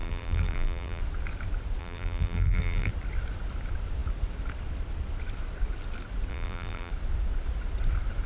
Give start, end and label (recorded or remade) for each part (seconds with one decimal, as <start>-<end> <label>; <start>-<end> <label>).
0.0-1.0 remade; 1.0-1.8 recorded; 1.8-2.9 remade; 2.9-6.3 recorded; 6.3-6.9 remade; 6.9-8.3 recorded